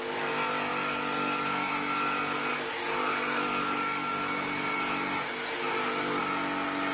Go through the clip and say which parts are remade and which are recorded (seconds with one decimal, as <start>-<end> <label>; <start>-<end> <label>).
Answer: 0.0-0.7 recorded; 0.7-1.7 remade; 1.7-2.5 recorded; 2.5-6.2 remade; 6.2-6.9 recorded